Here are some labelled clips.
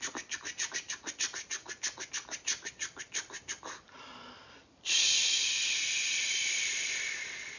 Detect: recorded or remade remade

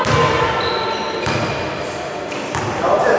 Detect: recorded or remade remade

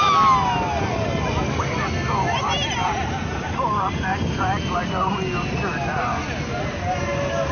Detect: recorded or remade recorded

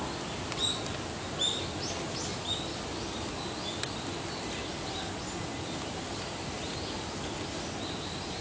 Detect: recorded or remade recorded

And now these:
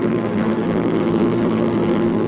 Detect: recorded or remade remade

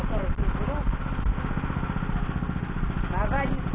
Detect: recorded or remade recorded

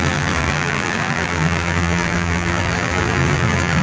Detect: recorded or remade remade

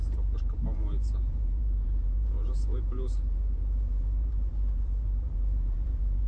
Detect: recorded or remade remade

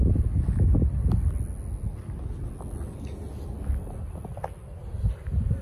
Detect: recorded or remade recorded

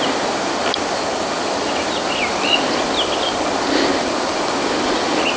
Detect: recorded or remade recorded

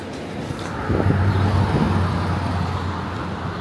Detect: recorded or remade recorded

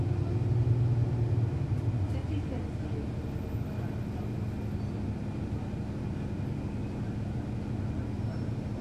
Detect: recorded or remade recorded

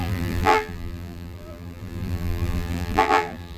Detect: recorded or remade remade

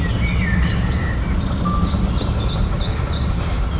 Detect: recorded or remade recorded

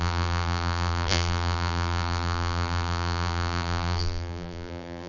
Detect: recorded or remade remade